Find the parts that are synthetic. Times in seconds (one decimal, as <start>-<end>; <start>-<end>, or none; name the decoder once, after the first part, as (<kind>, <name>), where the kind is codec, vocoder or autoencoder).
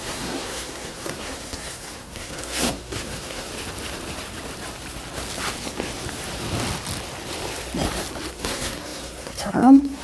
0.0-3.5 (codec, SNAC); 8.3-10.0